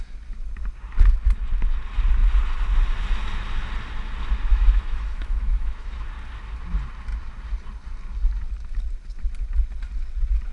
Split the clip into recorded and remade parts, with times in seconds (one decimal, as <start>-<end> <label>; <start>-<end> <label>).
0.0-4.5 recorded; 4.5-6.0 remade; 6.0-10.5 recorded

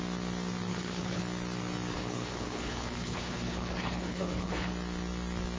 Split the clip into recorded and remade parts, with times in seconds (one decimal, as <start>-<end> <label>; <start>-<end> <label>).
0.0-0.7 recorded; 0.7-1.2 remade; 1.2-1.9 recorded; 1.9-4.7 remade; 4.7-5.6 recorded

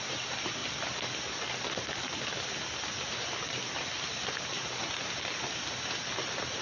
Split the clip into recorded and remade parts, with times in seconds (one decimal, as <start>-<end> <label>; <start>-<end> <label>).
0.0-6.6 recorded

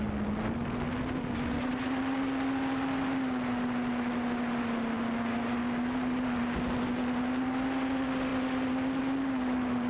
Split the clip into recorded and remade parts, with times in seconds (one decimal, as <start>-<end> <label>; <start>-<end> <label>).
0.0-9.9 recorded

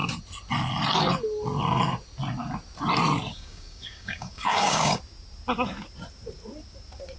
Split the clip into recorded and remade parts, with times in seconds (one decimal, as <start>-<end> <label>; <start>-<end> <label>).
0.0-3.3 recorded; 3.3-5.0 remade; 5.0-7.2 recorded

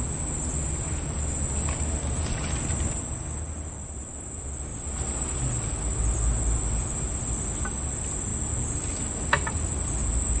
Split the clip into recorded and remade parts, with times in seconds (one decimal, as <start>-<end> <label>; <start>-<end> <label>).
0.0-4.7 recorded; 4.7-5.4 remade; 5.4-10.4 recorded

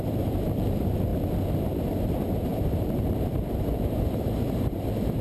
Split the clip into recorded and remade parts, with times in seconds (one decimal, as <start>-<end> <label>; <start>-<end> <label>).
0.0-1.1 remade; 1.1-2.1 recorded; 2.1-5.2 remade

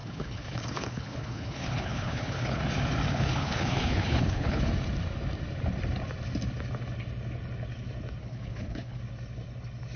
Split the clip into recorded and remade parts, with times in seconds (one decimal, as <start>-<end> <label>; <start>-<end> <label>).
0.0-2.6 remade; 2.6-3.1 recorded; 3.1-4.6 remade; 4.6-8.2 recorded; 8.2-9.0 remade; 9.0-10.0 recorded